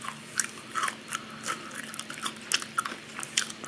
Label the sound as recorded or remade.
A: recorded